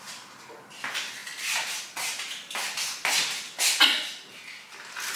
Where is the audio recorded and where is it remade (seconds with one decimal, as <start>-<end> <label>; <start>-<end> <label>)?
0.0-5.2 recorded